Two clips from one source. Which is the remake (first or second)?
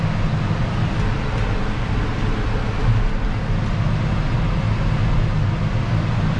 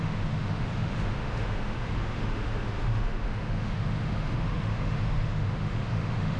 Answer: second